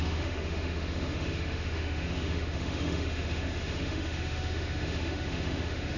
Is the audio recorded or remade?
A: remade